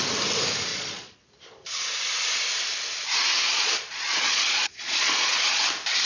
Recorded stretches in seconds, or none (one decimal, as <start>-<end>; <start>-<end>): 0.0-0.7; 1.3-3.5; 5.6-6.1